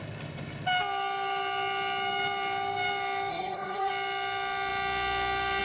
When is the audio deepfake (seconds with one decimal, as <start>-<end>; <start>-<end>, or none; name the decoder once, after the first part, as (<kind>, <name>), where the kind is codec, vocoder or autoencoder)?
3.3-3.9 (codec, SNAC)